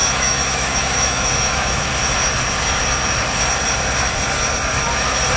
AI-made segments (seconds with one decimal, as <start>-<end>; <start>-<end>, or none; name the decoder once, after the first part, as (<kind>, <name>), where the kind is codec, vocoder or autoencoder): 0.0-1.9 (autoencoder, DAC-VAE)